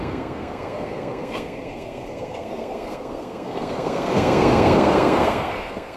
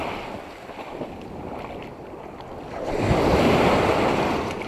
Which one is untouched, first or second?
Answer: second